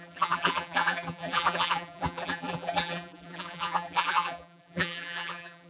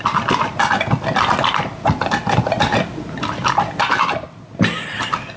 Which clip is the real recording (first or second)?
second